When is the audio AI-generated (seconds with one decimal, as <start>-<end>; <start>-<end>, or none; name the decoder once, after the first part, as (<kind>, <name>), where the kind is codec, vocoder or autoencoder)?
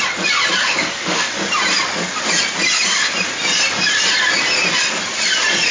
0.6-1.3 (autoencoder, DAC-VAE)